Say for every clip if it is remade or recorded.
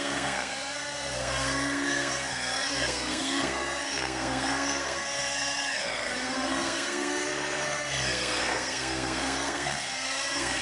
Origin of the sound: remade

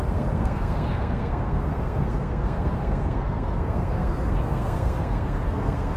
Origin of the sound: remade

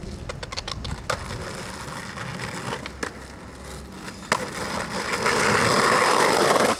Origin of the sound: recorded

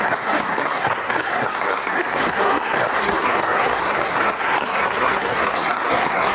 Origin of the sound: remade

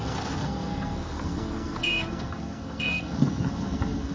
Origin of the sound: remade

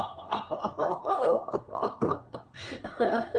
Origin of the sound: remade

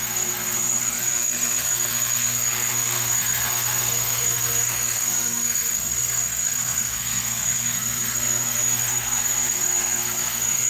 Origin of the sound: remade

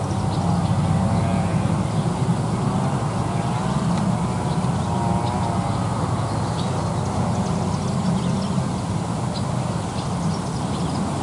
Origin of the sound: recorded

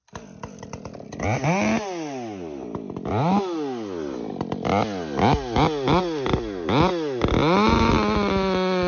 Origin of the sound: recorded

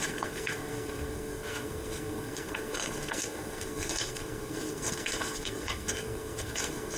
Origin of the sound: remade